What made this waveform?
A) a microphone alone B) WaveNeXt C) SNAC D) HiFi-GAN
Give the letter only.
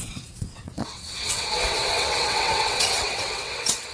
B